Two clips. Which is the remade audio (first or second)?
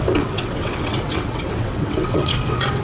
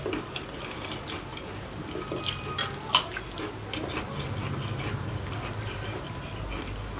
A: first